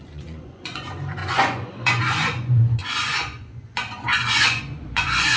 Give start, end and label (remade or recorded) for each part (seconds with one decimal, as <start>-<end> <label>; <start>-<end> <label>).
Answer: 0.0-5.4 remade